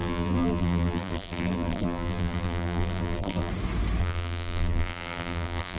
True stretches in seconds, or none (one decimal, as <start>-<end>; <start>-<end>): 3.5-4.0